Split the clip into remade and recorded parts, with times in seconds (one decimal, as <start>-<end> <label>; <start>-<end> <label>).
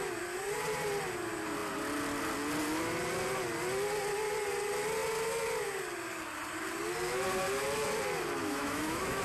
0.0-8.4 recorded; 8.4-9.2 remade